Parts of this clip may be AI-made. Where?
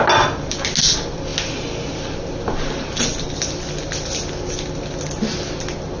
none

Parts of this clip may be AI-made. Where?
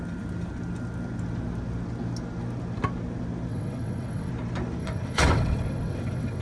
3.5-4.3; 4.8-6.4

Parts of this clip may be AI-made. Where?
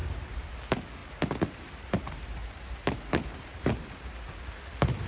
0.0-0.6; 1.0-4.1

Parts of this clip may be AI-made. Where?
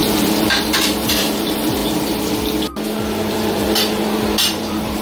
0.0-1.8; 3.3-5.0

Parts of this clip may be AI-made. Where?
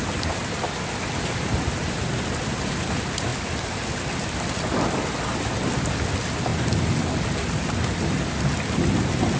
none